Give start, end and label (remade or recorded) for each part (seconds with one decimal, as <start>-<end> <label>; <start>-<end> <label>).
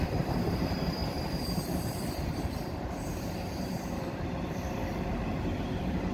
0.0-6.1 remade